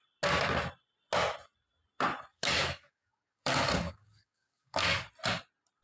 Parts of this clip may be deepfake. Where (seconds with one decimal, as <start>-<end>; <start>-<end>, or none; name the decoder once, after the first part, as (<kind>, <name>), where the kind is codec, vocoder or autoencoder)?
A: 2.3-5.1 (codec, DAC)